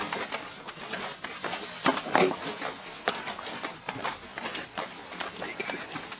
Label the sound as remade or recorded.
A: recorded